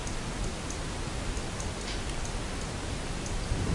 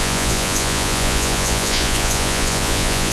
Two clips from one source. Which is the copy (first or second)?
second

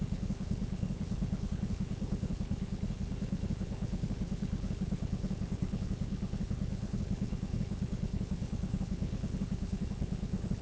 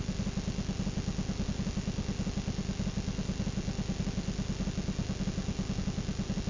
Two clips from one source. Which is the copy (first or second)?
first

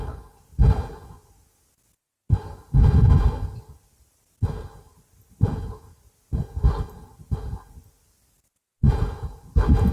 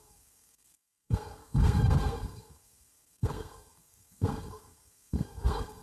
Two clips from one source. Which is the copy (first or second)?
second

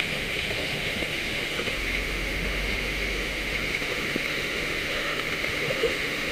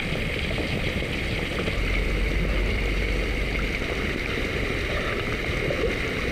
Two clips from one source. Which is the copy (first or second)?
first